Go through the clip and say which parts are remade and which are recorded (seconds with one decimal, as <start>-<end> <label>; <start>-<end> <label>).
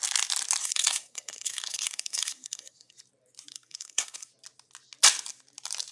0.0-0.6 recorded; 0.6-2.9 remade; 2.9-3.5 recorded; 3.5-4.3 remade; 4.3-5.9 recorded